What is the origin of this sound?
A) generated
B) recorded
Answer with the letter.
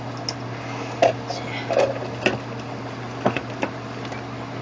B